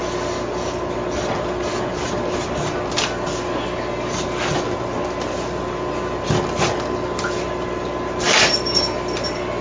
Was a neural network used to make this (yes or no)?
no